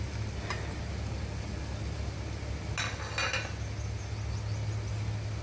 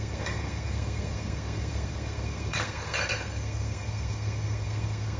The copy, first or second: second